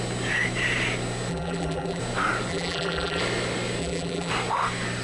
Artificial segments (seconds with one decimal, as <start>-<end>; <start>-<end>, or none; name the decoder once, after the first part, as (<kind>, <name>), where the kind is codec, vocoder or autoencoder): 1.3-2.0 (vocoder, BigVGAN v2); 2.5-3.2; 3.8-4.3